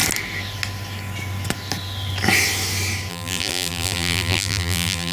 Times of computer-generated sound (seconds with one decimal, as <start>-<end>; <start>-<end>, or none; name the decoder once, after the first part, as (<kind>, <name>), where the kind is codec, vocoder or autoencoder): 3.1-5.1 (vocoder, BigVGAN v2)